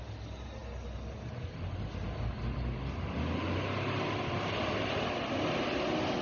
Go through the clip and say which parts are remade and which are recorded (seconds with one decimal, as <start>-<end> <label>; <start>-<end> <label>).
0.0-6.2 recorded